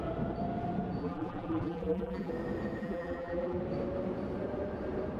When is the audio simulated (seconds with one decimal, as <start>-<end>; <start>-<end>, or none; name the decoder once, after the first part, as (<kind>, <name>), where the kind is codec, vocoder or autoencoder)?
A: 1.0-2.3 (vocoder, BigVGAN v2); 2.8-3.6